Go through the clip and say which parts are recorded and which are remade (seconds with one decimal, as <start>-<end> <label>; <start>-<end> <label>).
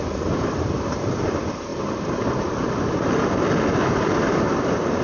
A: 0.0-1.7 remade; 1.7-2.6 recorded; 2.6-5.0 remade